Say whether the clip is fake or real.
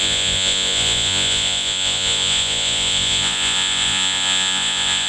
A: fake